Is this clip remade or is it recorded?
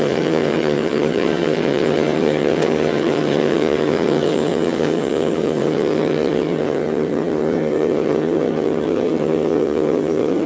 remade